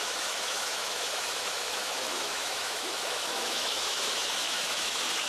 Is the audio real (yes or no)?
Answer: no